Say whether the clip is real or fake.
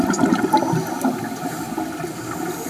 real